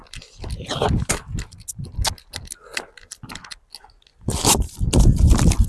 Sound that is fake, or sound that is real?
real